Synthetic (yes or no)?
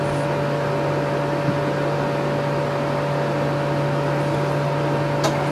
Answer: no